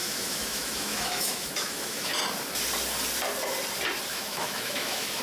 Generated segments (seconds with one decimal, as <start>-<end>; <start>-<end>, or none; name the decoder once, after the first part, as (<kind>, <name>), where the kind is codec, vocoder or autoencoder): 0.0-2.1 (autoencoder, DAC-VAE); 4.1-5.2